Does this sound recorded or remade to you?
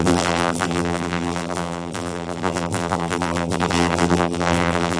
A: remade